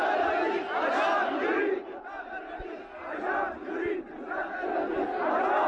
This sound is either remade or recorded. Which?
recorded